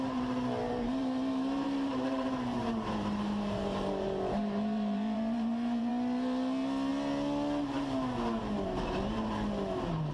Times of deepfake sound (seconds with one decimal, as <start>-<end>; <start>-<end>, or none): 0.6-5.9